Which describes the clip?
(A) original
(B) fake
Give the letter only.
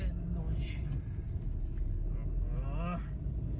A